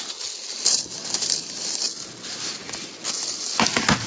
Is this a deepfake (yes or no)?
no